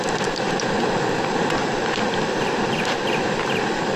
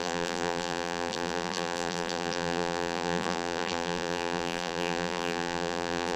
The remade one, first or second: second